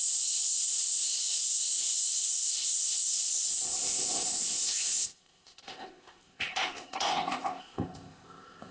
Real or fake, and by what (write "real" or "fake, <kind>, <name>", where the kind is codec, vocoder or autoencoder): fake, codec, ZipCodec